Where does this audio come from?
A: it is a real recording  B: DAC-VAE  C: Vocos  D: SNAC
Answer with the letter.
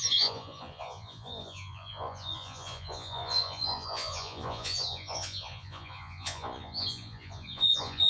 C